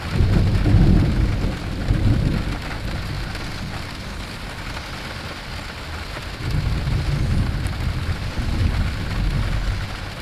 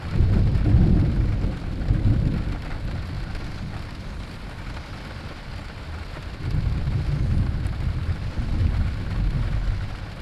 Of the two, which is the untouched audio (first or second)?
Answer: first